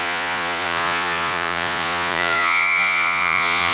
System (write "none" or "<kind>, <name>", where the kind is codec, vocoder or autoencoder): vocoder, Vocos